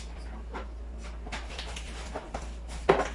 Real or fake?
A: real